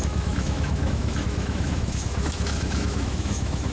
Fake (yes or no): yes